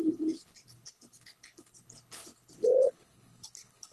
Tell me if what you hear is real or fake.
fake